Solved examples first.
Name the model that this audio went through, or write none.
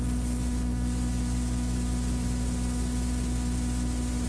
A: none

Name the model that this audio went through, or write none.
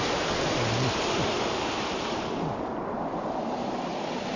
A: none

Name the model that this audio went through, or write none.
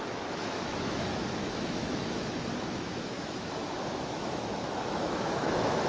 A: autoencoder, DAC-VAE